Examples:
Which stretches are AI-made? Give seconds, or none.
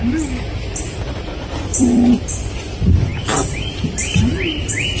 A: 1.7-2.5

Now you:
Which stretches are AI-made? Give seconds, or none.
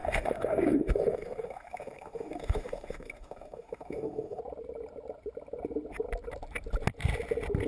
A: 0.0-4.4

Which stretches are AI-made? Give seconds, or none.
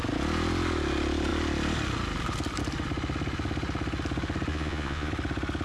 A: 4.5-5.1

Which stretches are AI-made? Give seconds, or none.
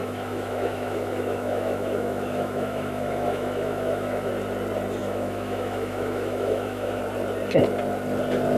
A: 0.0-4.3; 5.0-7.0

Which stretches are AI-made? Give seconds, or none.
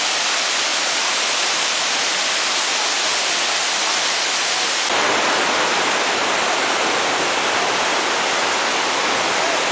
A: 0.7-2.2